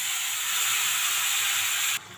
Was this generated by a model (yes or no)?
no